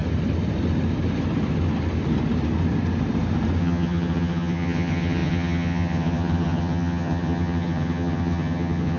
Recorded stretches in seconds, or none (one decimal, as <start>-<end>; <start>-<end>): 0.0-3.6